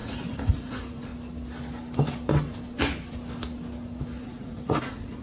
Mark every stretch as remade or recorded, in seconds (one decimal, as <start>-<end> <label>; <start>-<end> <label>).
0.0-1.1 remade; 1.1-4.2 recorded; 4.2-5.2 remade